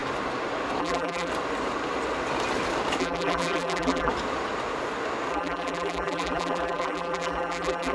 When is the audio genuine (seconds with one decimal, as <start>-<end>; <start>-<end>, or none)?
0.0-0.8; 1.3-3.0; 4.1-5.3